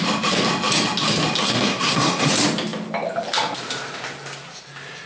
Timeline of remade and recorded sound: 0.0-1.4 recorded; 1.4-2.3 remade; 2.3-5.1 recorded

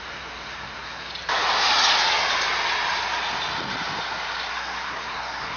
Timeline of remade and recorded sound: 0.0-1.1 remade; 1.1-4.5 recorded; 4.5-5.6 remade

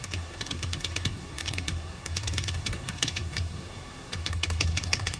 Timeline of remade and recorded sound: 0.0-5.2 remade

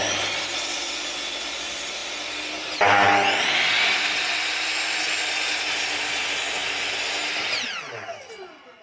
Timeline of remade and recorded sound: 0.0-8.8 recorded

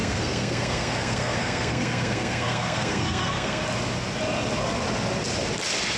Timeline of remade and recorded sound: 0.0-3.6 remade; 3.6-6.0 recorded

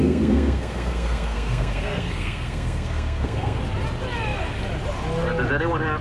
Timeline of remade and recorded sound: 0.0-3.6 remade; 3.6-6.0 recorded